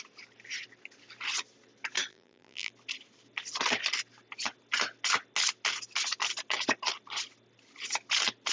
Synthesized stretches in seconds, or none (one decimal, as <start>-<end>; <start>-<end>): 2.1-2.7